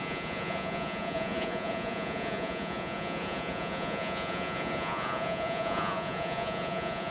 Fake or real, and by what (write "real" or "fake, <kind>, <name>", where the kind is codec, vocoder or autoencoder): fake, vocoder, Vocos